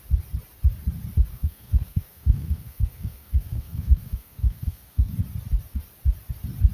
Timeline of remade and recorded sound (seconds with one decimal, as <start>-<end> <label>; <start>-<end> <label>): 0.0-1.3 recorded; 1.3-5.1 remade; 5.1-6.7 recorded